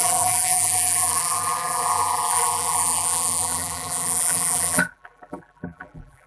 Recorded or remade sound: remade